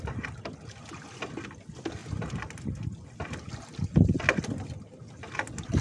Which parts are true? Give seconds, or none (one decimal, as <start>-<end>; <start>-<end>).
0.0-5.8